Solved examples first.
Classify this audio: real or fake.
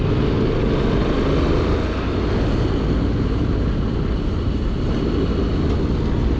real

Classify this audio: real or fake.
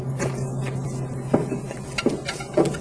real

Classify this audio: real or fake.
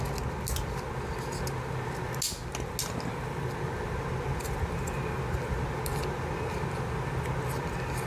real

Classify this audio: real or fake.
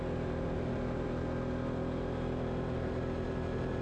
real